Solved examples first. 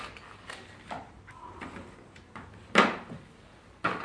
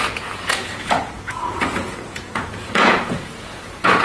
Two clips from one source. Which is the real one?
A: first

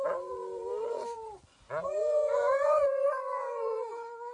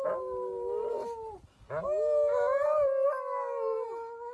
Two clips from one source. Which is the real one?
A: second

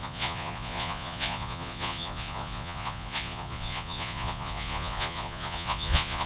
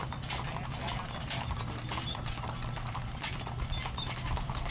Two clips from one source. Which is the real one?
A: second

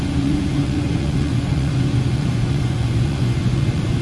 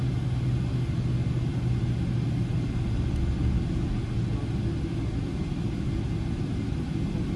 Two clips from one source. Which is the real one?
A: second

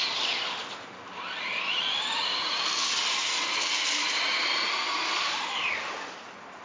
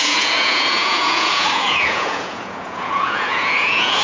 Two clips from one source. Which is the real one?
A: first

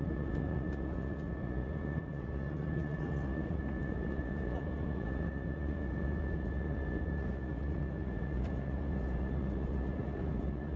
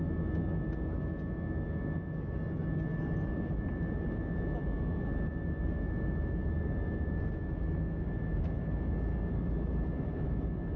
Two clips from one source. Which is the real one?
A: second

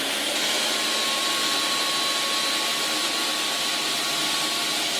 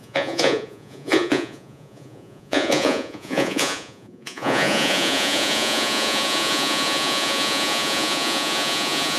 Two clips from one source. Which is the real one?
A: first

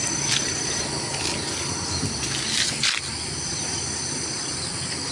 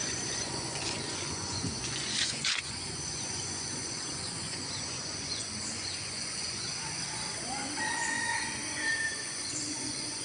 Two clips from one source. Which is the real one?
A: first